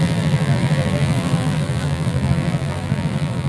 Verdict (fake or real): fake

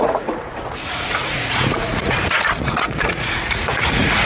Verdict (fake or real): fake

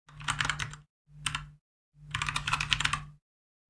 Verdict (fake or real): real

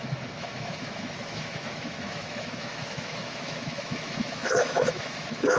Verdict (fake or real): fake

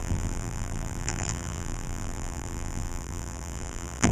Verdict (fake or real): fake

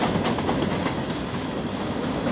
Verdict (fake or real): real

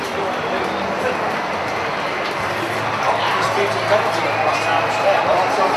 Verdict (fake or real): real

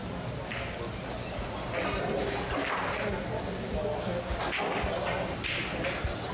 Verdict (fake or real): real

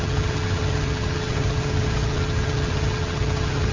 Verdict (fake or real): fake